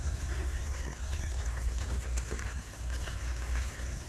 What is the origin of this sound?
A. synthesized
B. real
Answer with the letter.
A